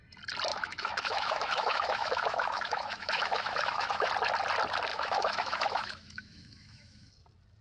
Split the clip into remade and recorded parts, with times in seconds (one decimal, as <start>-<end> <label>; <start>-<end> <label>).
0.0-0.5 recorded; 0.5-4.1 remade; 4.1-4.9 recorded; 4.9-7.1 remade; 7.1-7.6 recorded